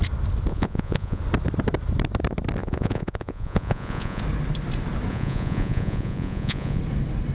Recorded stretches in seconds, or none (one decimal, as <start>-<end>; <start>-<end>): 0.0-0.5; 1.2-2.6; 4.2-5.1; 6.8-7.3